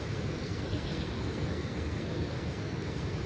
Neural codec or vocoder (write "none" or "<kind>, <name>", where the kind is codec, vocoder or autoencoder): codec, SNAC